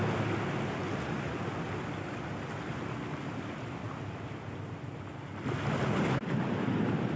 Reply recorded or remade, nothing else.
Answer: recorded